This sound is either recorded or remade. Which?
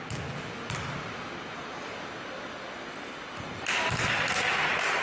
recorded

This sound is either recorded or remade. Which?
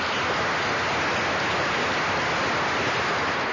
recorded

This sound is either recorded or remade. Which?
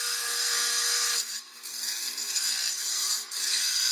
remade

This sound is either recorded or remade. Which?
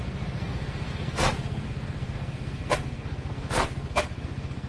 remade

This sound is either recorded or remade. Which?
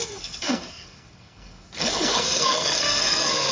remade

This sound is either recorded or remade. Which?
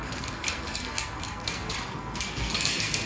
remade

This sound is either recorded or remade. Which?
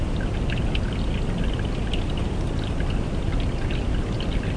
recorded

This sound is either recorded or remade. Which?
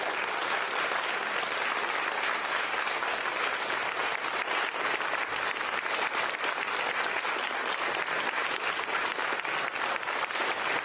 recorded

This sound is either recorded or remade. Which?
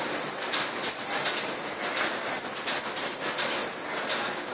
recorded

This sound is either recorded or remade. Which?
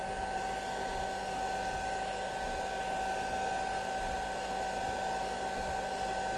recorded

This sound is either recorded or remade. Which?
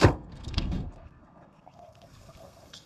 remade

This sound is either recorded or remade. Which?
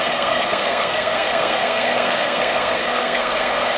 remade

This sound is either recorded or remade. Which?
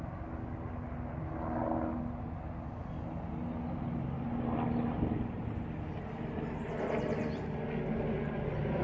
recorded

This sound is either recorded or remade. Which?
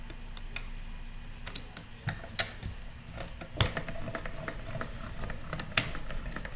recorded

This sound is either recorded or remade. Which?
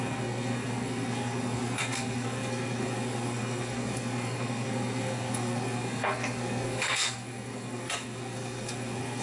remade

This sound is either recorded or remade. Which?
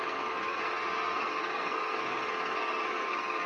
remade